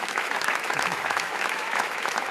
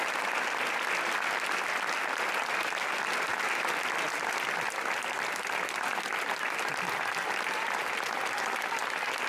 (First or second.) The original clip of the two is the second